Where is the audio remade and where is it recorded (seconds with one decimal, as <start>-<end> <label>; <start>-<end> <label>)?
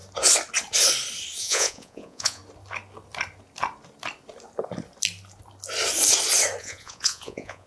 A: 0.0-1.4 recorded; 1.4-2.4 remade; 2.4-6.6 recorded; 6.6-7.7 remade